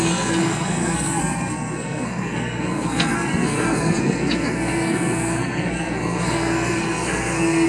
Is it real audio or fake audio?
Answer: fake